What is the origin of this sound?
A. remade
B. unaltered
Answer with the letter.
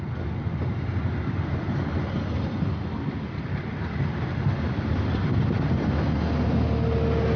B